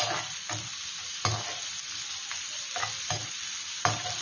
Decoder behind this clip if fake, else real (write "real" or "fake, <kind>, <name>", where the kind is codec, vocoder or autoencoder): real